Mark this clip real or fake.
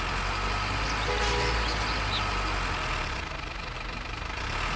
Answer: real